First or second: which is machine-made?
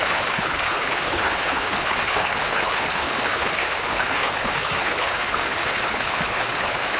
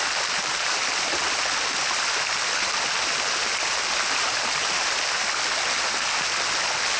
first